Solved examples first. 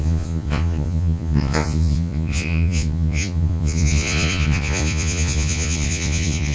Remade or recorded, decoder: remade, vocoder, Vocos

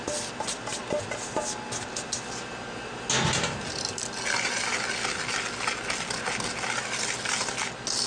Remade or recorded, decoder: recorded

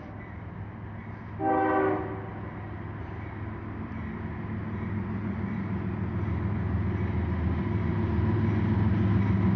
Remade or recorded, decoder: recorded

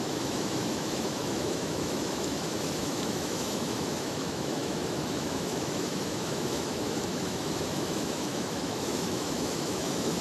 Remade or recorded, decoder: remade, autoencoder, DAC-VAE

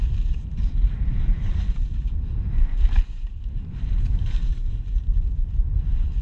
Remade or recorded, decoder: remade, vocoder, BigVGAN v2